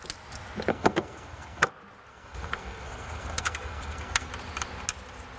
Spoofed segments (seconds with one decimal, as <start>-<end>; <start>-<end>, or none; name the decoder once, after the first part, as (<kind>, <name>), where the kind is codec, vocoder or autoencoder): 0.7-1.7 (codec, SNAC); 2.1-4.3